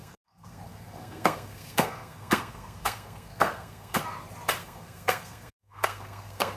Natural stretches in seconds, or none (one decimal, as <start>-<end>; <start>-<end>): 4.0-4.6